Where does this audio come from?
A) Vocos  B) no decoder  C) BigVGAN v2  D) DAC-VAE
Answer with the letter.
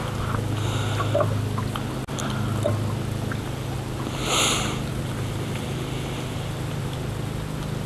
B